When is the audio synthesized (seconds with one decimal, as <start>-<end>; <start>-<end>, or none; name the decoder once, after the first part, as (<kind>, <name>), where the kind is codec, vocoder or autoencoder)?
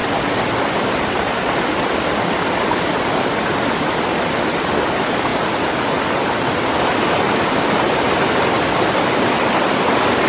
none